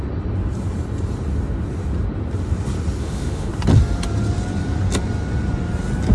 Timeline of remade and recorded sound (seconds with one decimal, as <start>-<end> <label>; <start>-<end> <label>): 0.0-3.0 recorded; 3.0-3.5 remade; 3.5-6.1 recorded